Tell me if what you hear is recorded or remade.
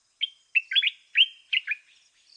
recorded